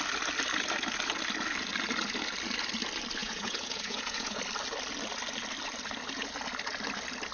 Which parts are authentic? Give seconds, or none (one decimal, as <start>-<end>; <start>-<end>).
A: 0.0-3.2; 4.4-7.3

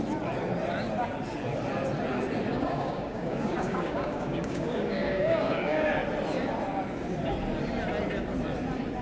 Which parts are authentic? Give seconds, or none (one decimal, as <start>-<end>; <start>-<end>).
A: 0.0-2.5; 5.9-9.0